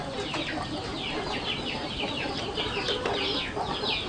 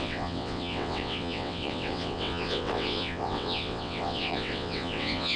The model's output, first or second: second